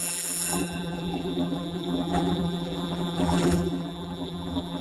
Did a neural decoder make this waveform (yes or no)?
yes